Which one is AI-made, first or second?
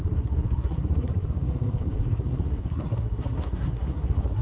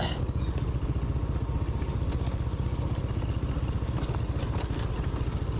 first